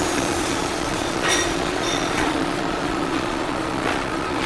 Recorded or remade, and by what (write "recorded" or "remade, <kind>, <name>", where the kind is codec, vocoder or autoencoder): remade, vocoder, Vocos